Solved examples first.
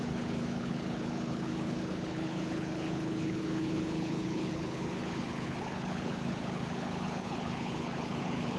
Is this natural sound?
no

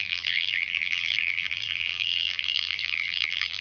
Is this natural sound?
no